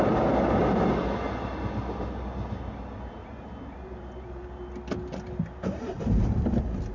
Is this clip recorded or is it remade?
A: recorded